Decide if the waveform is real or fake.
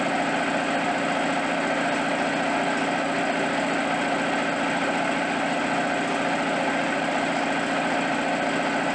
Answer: real